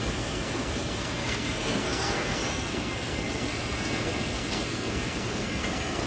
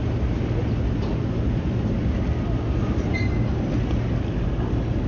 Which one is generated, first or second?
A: first